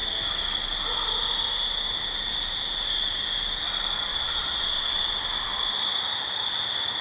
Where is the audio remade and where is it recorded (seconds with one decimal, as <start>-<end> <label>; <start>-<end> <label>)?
0.0-4.1 recorded; 4.1-5.1 remade; 5.1-7.0 recorded